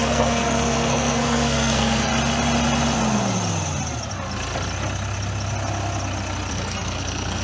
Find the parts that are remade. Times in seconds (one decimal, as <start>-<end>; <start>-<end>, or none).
0.0-2.1; 6.5-7.4